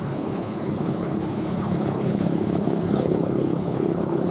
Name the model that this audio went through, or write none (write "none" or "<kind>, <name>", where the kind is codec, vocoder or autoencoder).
codec, HILCodec